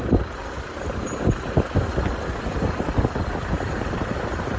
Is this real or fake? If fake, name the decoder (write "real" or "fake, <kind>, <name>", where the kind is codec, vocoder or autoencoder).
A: fake, vocoder, BigVGAN v2